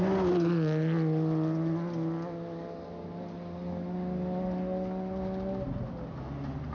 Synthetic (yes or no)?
no